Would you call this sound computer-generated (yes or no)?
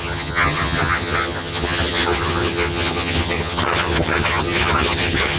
yes